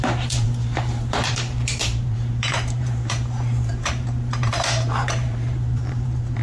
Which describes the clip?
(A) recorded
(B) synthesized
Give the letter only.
B